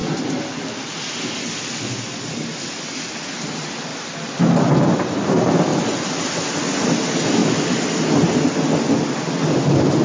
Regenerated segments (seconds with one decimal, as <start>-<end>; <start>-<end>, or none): none